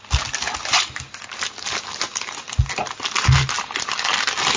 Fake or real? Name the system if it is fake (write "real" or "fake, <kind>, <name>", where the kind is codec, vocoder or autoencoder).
real